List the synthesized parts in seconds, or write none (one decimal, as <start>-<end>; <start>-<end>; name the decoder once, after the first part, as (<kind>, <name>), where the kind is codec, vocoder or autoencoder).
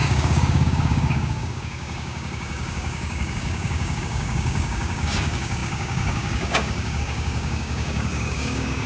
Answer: 0.0-8.9 (codec, DAC)